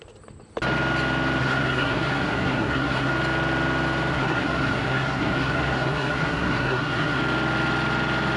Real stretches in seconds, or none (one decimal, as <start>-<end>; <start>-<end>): 0.0-1.4; 3.1-4.1; 7.2-8.4